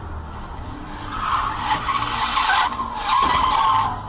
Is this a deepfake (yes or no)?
no